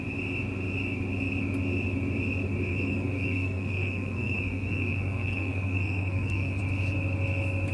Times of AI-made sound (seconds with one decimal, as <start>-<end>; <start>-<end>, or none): 2.7-6.6